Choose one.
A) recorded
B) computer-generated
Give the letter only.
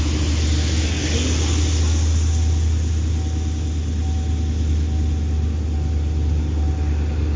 A